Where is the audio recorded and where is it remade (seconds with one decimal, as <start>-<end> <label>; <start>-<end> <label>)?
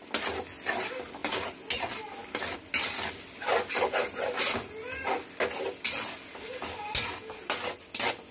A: 0.0-8.3 recorded